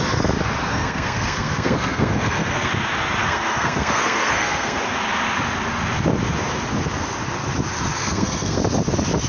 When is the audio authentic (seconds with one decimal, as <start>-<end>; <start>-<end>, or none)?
0.0-0.7; 2.7-3.2; 4.8-8.0; 8.6-9.3